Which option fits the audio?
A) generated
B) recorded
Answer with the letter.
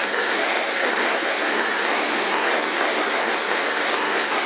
A